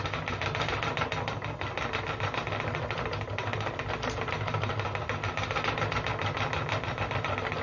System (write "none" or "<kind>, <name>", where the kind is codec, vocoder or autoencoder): none